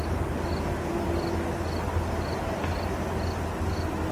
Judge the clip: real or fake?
real